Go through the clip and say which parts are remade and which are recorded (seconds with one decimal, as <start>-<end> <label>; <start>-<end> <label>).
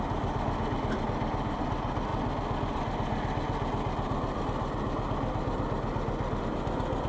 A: 0.0-7.1 recorded